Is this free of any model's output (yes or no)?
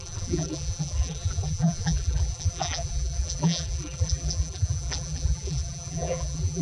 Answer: no